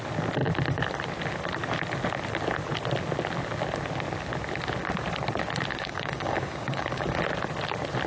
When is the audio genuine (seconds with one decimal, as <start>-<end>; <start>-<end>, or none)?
0.0-5.7; 7.2-8.1